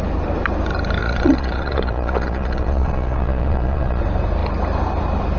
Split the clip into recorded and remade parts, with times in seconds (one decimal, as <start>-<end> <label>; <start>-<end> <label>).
0.0-1.0 recorded; 1.0-4.0 remade; 4.0-5.4 recorded